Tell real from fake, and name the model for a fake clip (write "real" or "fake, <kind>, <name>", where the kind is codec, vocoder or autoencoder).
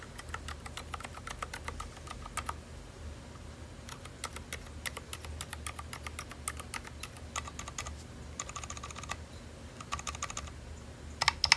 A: real